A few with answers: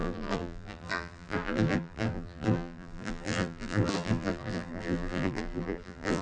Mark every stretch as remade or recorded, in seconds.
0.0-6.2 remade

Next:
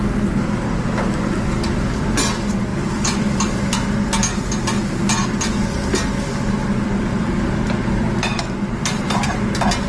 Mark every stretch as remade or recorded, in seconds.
0.0-2.7 recorded; 2.7-3.7 remade; 3.7-7.1 recorded; 7.1-8.4 remade; 8.4-9.9 recorded

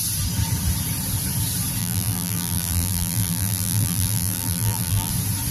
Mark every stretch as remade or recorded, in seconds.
0.0-1.8 recorded; 1.8-5.1 remade; 5.1-5.5 recorded